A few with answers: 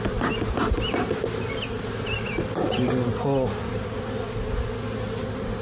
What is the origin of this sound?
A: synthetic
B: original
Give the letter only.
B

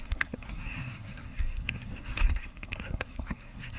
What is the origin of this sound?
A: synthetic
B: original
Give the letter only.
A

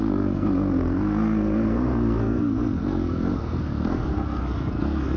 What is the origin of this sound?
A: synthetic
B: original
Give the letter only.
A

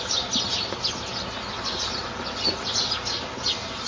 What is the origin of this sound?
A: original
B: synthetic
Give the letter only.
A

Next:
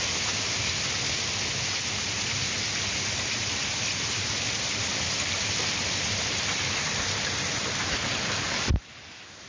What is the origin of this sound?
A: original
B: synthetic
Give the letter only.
A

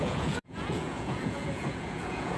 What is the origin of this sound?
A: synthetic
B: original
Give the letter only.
A